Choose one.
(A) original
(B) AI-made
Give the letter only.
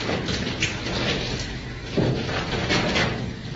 A